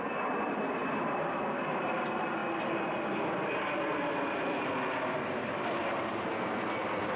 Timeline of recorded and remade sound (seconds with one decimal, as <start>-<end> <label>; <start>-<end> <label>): 0.0-7.2 recorded